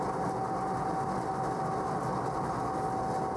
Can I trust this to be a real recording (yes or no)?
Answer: yes